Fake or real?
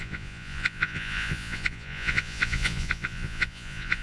fake